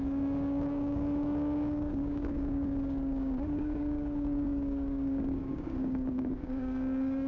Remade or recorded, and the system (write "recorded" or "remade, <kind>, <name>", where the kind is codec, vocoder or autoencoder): remade, codec, DAC